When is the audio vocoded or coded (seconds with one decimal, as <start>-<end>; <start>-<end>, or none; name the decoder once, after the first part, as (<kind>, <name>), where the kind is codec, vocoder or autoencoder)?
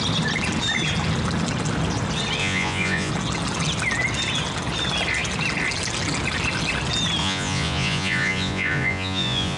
2.4-3.1 (vocoder, Vocos); 7.2-9.6